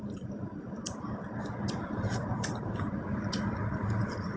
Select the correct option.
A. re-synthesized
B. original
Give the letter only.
B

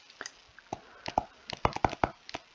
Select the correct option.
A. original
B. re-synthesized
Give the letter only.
A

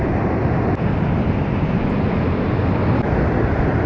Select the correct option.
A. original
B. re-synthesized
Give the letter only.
A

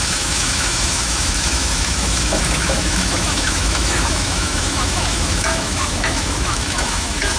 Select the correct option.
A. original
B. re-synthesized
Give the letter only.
B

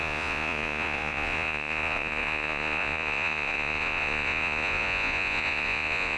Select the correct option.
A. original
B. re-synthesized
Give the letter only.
B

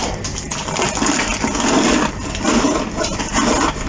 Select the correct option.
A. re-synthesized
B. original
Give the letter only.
B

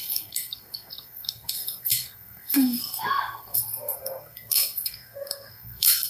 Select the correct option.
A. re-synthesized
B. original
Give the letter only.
A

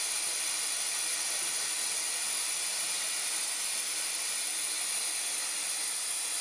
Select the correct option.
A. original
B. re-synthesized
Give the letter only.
A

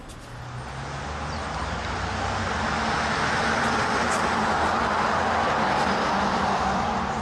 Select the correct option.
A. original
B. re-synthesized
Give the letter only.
A